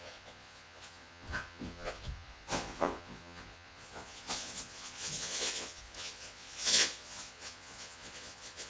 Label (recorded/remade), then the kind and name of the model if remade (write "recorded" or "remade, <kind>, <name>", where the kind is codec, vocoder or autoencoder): remade, vocoder, Vocos